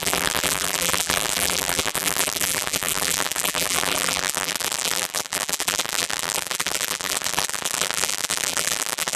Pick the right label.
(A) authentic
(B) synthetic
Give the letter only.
B